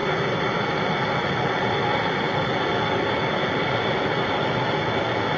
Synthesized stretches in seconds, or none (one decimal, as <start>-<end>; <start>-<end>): none